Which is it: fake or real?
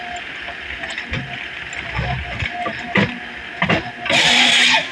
real